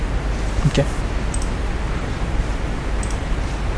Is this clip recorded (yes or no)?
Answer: yes